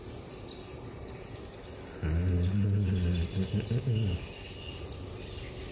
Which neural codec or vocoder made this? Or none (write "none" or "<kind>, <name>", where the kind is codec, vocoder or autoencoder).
none